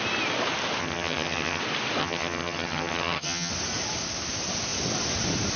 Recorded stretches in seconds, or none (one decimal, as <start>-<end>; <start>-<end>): 0.0-0.8; 1.6-2.0; 3.5-5.6